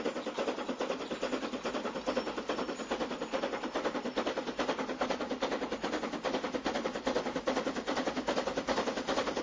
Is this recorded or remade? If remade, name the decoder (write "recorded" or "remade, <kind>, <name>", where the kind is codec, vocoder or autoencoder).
recorded